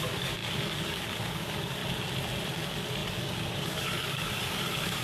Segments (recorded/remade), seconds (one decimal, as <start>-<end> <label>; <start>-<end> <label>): 0.0-1.8 remade; 1.8-2.5 recorded; 2.5-5.0 remade